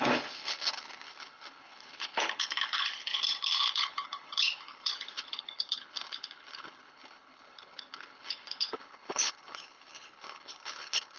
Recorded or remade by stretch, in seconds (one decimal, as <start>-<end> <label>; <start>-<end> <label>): 0.0-11.2 remade